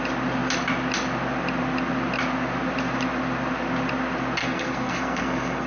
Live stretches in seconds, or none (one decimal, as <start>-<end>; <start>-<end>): 0.0-4.4